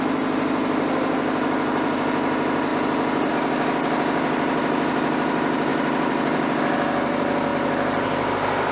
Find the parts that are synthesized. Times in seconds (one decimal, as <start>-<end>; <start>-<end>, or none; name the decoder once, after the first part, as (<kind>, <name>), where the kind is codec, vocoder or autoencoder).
0.0-2.7 (vocoder, BigVGAN v2); 3.3-7.5